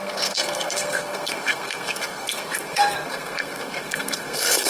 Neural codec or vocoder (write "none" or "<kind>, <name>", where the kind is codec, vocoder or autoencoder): codec, SNAC